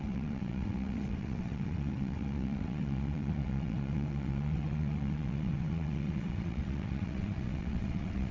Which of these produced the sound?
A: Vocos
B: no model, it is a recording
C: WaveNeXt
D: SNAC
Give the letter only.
C